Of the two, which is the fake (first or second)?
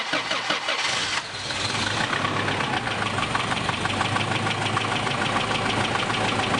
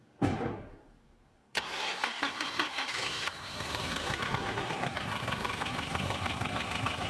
second